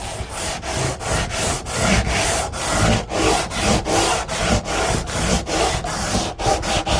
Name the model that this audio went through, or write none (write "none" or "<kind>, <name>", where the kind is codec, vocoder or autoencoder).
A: none